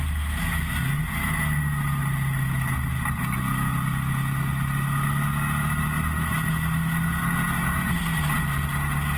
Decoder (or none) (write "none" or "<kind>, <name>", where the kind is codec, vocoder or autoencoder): none